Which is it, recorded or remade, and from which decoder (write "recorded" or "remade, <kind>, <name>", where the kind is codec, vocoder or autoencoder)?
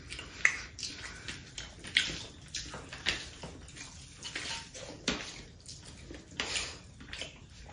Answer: recorded